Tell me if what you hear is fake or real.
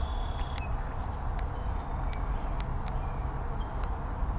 real